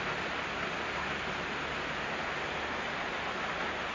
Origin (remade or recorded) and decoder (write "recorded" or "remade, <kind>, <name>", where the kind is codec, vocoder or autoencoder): recorded